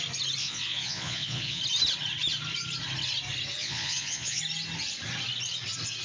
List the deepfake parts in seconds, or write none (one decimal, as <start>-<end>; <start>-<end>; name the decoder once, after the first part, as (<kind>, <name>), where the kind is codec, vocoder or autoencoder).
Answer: 0.4-1.6 (vocoder, Vocos); 3.6-4.4